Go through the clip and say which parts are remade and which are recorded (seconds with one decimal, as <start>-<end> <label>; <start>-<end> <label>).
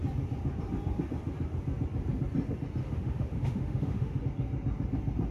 0.0-2.8 recorded; 2.8-4.2 remade; 4.2-5.3 recorded